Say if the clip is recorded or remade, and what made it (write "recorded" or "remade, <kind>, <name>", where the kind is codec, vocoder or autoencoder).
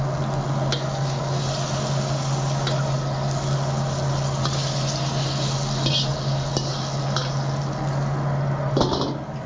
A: recorded